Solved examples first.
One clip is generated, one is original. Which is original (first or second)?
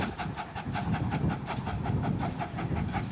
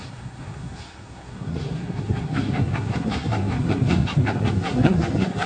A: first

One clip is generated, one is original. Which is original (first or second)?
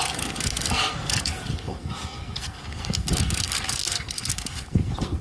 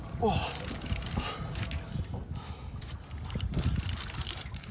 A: second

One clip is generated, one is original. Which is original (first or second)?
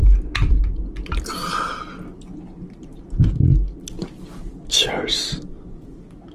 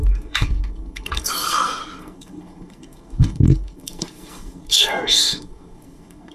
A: first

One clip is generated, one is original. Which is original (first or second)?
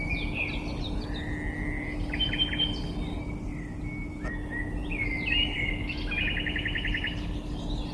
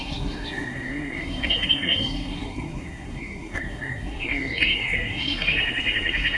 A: first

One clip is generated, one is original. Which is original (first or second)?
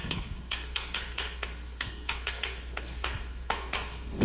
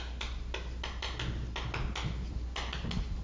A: second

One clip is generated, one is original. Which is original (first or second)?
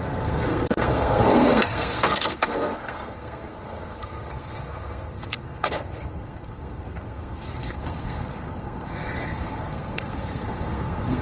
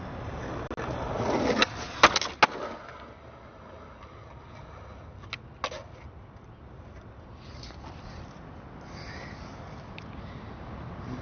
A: second